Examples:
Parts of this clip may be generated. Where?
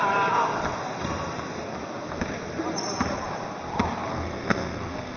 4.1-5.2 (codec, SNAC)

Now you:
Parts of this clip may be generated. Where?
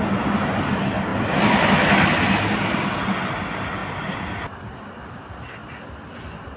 none